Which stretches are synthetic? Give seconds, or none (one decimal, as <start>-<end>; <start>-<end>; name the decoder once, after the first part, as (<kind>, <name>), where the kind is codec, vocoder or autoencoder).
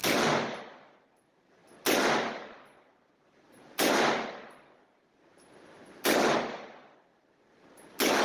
0.0-0.6 (vocoder, BigVGAN v2)